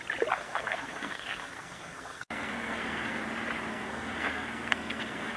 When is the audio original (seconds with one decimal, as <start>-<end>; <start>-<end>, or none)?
0.0-0.4; 3.2-3.7